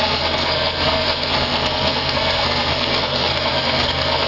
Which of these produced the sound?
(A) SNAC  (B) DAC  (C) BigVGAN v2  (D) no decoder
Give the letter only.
A